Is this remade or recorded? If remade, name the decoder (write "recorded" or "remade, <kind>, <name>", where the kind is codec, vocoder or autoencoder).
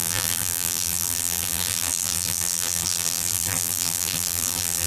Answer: remade, vocoder, BigVGAN v2